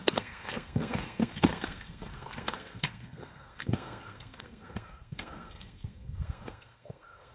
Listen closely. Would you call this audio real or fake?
fake